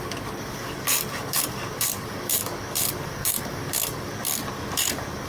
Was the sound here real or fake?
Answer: fake